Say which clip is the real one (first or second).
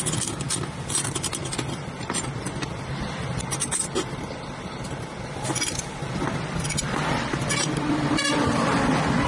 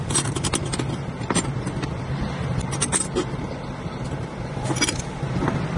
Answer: second